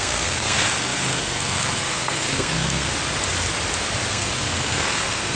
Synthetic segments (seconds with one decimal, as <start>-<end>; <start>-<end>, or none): 0.0-2.9; 4.1-5.3